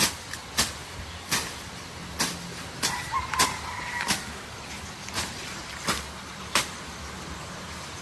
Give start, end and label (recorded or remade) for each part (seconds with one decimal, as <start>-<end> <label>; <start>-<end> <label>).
0.0-8.0 recorded